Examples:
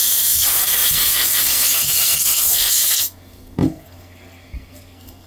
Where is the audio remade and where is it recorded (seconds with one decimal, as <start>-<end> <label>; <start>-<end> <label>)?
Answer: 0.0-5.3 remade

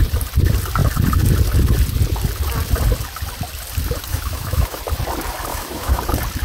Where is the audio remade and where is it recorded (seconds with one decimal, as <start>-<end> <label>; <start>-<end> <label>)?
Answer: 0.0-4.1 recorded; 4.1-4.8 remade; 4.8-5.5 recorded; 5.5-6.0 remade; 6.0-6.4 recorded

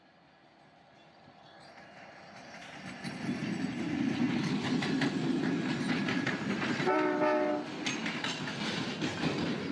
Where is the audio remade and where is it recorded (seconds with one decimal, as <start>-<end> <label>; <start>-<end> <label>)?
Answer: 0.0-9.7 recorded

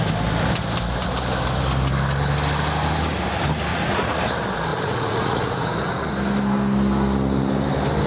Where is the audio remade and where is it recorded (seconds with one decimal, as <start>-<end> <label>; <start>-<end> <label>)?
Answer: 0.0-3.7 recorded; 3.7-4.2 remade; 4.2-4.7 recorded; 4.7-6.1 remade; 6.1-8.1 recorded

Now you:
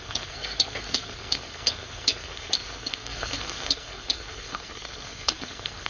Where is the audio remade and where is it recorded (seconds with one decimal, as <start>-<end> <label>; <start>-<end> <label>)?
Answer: 0.0-5.9 remade

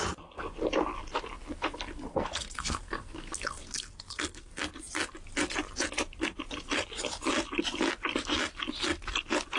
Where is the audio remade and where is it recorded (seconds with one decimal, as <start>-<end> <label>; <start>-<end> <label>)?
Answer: 0.0-2.1 recorded; 2.1-4.6 remade; 4.6-9.6 recorded